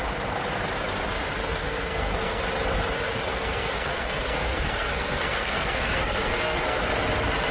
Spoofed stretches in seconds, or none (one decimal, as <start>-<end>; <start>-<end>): 1.6-2.4; 3.3-6.8